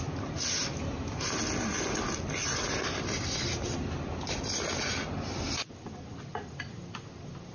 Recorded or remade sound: recorded